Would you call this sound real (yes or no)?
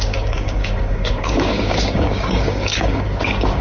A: no